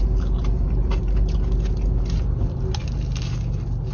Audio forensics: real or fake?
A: real